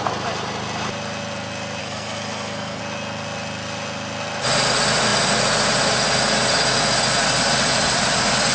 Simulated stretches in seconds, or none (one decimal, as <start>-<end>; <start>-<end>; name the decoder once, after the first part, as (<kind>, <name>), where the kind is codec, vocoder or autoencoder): 1.8-2.8 (codec, SNAC)

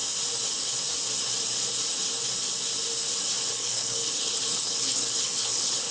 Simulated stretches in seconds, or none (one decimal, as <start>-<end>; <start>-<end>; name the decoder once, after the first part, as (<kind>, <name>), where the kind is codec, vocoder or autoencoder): 3.5-5.9 (codec, HILCodec)

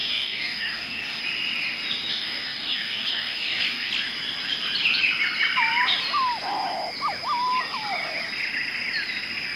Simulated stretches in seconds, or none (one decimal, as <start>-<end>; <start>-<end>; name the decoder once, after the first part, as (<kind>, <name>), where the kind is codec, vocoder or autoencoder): 0.0-1.2 (codec, DAC); 2.1-3.9